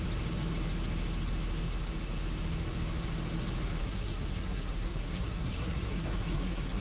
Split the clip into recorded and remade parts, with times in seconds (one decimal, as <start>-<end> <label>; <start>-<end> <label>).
0.0-3.8 recorded; 3.8-6.8 remade